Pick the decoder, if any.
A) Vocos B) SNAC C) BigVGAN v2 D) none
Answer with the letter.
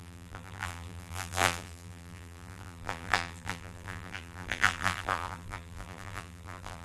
C